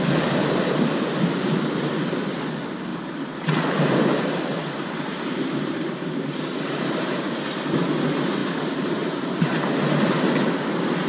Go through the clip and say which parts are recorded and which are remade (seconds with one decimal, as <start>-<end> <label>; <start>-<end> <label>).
0.0-2.9 recorded; 2.9-7.3 remade; 7.3-8.4 recorded; 8.4-9.6 remade; 9.6-11.1 recorded